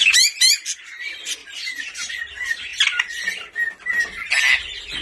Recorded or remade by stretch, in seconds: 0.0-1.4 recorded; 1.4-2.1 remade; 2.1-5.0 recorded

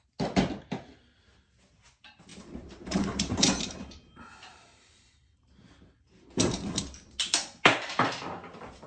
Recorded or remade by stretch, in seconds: 0.0-2.3 recorded; 2.3-6.8 remade; 6.8-8.9 recorded

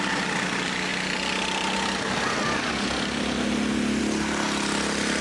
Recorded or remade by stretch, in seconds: 0.0-0.9 remade; 0.9-4.0 recorded; 4.0-5.2 remade

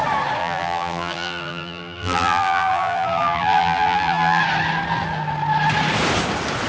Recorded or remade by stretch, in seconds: 0.0-0.4 recorded; 0.4-4.4 remade; 4.4-6.7 recorded